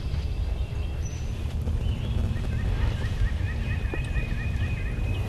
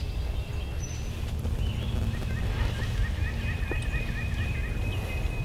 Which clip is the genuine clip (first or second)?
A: second